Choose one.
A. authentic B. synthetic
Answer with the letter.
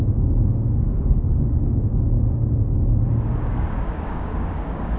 B